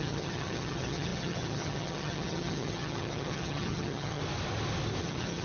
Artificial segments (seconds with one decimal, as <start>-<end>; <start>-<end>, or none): 0.0-4.2; 5.0-5.4